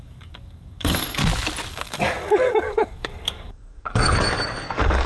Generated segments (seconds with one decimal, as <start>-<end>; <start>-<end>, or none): 0.0-1.2; 1.7-5.1